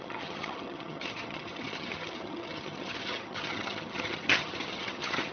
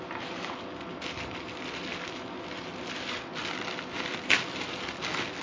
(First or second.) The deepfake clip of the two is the first